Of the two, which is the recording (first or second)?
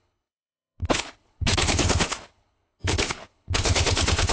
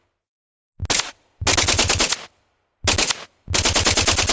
second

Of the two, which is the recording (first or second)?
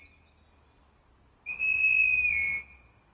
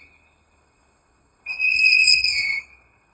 first